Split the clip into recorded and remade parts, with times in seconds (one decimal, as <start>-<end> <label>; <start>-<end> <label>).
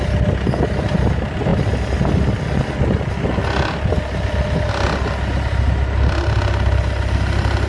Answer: 0.0-7.7 recorded